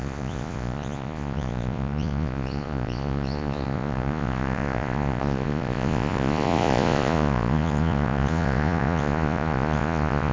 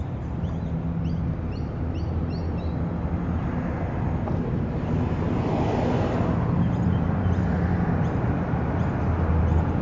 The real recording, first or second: second